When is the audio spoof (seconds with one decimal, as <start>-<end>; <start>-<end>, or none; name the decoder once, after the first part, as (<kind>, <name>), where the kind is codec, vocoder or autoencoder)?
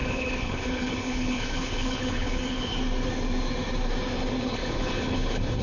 0.0-2.7 (codec, HILCodec); 4.4-5.6